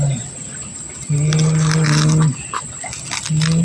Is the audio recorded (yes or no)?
yes